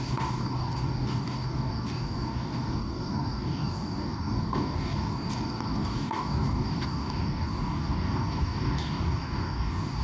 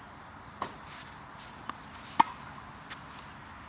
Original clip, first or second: second